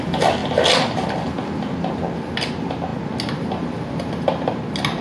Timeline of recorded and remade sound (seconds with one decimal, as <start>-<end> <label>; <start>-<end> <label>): 0.0-5.0 recorded